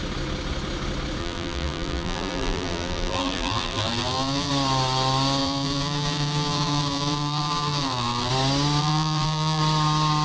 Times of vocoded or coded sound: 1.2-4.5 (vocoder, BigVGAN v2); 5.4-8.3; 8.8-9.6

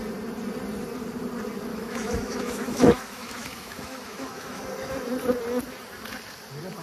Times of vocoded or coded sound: 1.7-4.6 (autoencoder, DAC-VAE)

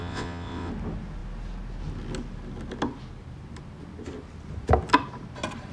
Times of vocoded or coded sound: 0.0-0.7 (vocoder, WaveNeXt)

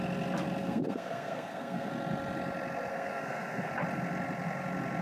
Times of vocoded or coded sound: 0.6-1.9 (codec, SNAC); 2.9-3.7

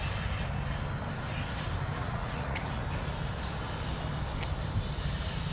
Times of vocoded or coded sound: 2.0-2.8 (vocoder, Vocos)